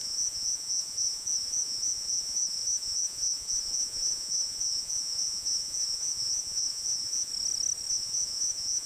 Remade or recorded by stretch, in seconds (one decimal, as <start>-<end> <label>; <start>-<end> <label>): 0.0-7.3 remade; 7.3-7.9 recorded; 7.9-8.9 remade